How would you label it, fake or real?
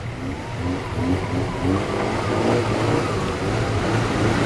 real